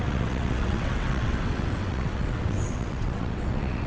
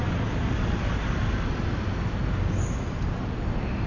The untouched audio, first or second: second